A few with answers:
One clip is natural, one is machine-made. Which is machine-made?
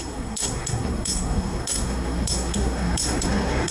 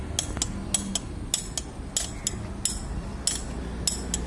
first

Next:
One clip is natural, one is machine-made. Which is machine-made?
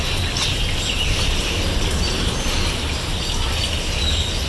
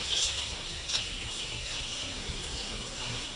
second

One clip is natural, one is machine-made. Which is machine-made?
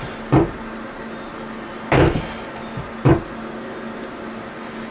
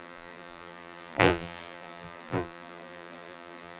second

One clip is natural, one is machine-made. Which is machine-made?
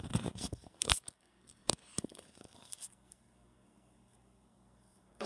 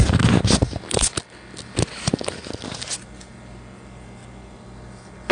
first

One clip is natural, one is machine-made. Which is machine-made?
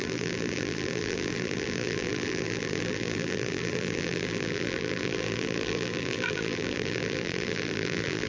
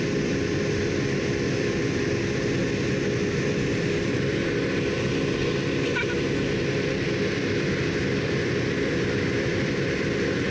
first